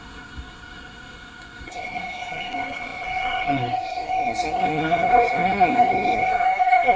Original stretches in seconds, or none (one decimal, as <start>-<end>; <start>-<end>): none